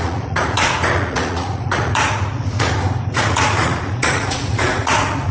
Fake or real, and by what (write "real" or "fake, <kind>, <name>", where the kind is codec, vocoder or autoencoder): fake, vocoder, Vocos